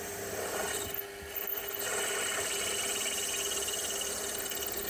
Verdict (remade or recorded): recorded